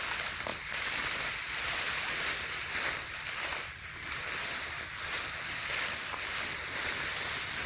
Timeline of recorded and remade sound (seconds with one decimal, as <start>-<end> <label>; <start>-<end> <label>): 0.0-7.7 recorded